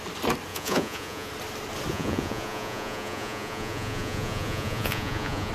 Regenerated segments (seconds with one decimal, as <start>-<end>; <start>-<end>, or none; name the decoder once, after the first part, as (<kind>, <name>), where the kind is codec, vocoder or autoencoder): 0.5-1.3 (vocoder, Vocos); 1.9-5.5